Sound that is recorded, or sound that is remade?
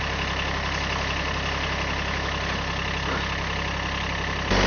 recorded